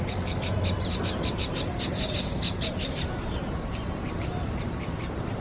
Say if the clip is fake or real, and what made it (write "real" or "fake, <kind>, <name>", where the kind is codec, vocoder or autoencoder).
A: fake, vocoder, BigVGAN v2